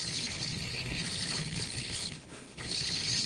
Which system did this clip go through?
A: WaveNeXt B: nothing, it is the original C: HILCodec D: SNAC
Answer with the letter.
C